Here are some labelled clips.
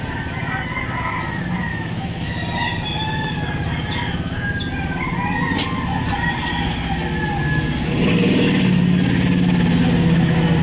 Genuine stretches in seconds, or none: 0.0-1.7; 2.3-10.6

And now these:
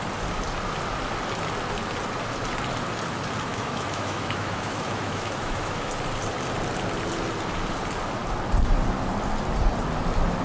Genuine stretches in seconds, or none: 0.0-3.5; 5.9-10.4

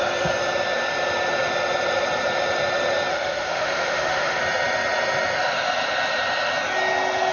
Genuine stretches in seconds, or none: 0.0-3.1; 4.4-7.3

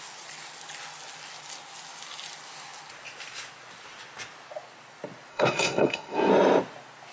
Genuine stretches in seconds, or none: 0.0-5.3; 6.3-7.1

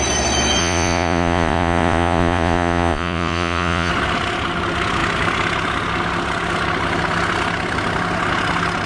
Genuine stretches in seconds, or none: 0.0-0.6; 3.9-8.9

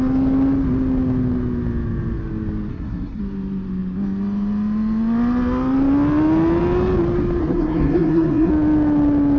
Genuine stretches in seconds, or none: 0.0-2.7; 3.2-7.4; 8.5-9.4